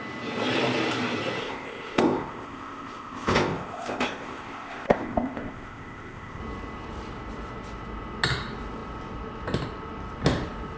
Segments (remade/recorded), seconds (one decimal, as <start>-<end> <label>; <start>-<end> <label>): 0.0-1.4 recorded; 1.4-6.4 remade; 6.4-10.8 recorded